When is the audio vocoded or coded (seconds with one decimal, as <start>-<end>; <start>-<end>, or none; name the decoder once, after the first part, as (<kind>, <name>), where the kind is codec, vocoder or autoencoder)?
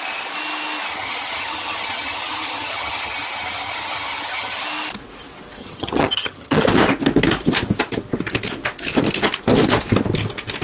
0.9-4.6 (vocoder, HiFi-GAN); 5.6-6.6